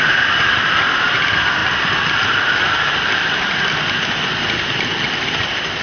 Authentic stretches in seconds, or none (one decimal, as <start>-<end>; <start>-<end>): 0.0-5.8